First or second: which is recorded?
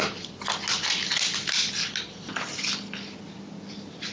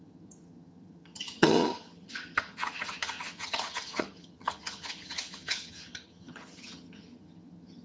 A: first